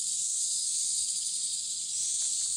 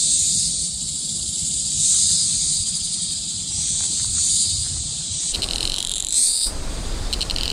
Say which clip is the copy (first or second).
second